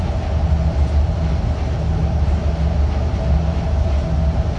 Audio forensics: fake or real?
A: real